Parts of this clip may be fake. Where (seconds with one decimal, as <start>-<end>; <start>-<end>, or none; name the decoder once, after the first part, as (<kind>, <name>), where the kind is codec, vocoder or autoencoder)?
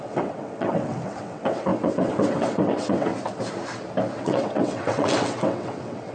0.0-3.1 (vocoder, WaveNeXt); 4.2-6.1